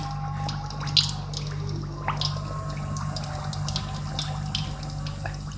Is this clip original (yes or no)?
yes